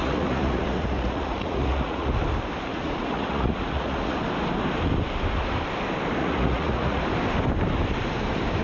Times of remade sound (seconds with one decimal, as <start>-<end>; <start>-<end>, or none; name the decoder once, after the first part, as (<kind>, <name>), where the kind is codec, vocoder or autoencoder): 0.0-2.2 (vocoder, Vocos); 2.7-4.2; 6.2-7.0